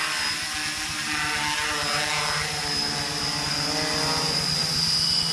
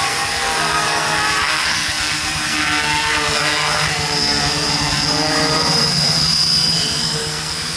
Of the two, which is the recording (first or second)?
first